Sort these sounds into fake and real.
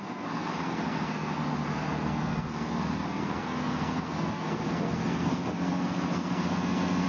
fake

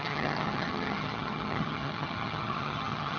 fake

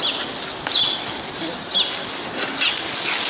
real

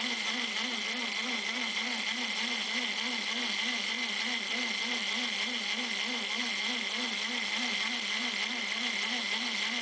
real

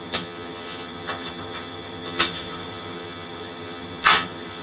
fake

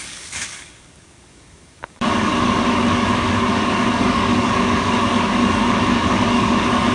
fake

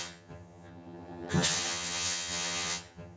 fake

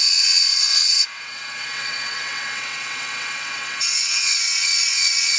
fake